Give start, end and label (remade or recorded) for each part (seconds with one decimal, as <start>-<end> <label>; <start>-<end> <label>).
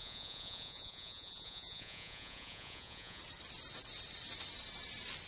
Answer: 0.0-3.2 remade; 3.2-5.3 recorded